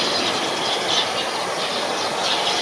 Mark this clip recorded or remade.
recorded